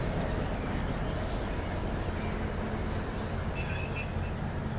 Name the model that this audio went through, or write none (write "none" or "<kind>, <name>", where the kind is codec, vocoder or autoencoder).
none